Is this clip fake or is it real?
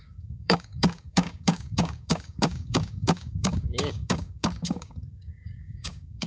fake